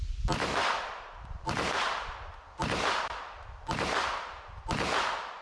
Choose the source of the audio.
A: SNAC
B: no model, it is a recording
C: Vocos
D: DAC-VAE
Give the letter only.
B